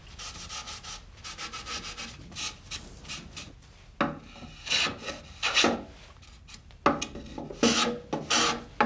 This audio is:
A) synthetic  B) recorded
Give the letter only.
B